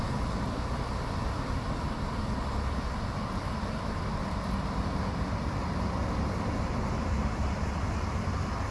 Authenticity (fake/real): real